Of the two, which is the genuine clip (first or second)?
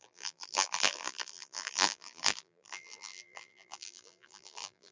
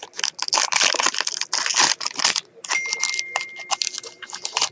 second